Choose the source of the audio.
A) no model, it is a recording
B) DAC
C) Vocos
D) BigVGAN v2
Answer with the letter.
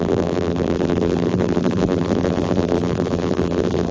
D